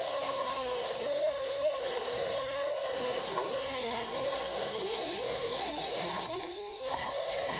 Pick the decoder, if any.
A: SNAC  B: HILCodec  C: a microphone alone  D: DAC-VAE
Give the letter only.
A